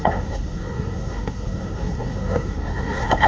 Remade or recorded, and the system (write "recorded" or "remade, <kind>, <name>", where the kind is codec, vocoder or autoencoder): remade, codec, SNAC